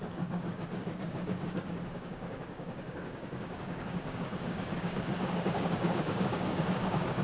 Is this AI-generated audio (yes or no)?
yes